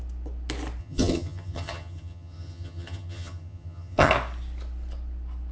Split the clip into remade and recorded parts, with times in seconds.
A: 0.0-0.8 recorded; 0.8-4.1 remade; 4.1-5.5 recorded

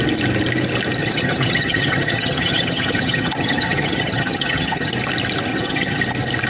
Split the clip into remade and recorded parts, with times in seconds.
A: 0.0-1.0 recorded; 1.0-4.9 remade; 4.9-5.5 recorded; 5.5-6.0 remade; 6.0-6.5 recorded

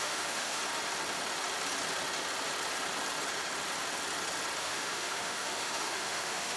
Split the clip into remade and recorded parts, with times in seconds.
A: 0.0-0.6 remade; 0.6-4.6 recorded; 4.6-6.6 remade

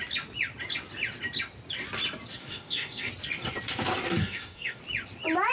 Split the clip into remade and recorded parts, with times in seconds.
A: 0.0-2.4 recorded; 2.4-3.1 remade; 3.1-4.2 recorded; 4.2-4.8 remade; 4.8-5.5 recorded

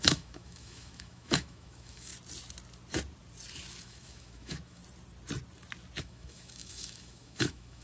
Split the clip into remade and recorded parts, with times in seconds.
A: 0.0-2.1 remade; 2.1-3.8 recorded; 3.8-4.8 remade; 4.8-6.0 recorded; 6.0-7.8 remade